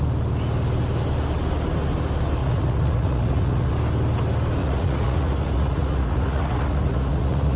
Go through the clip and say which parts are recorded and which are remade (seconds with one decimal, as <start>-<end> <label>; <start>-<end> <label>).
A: 0.0-2.4 recorded; 2.4-3.7 remade; 3.7-4.6 recorded; 4.6-7.6 remade